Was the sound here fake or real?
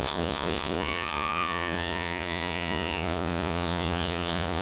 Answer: fake